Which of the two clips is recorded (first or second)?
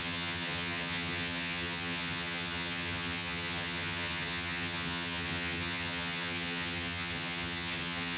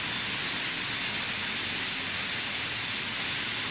second